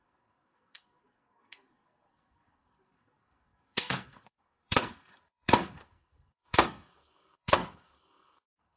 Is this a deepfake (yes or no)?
yes